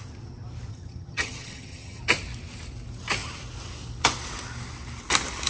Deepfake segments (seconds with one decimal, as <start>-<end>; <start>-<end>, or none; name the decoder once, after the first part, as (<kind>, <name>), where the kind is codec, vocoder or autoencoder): 0.7-2.0 (vocoder, HiFi-GAN)